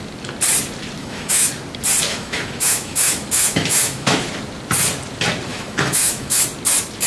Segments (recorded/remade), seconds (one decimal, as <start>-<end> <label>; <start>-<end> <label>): 0.0-1.0 recorded; 1.0-1.5 remade; 1.5-2.1 recorded; 2.1-4.3 remade; 4.3-5.5 recorded; 5.5-6.4 remade; 6.4-7.1 recorded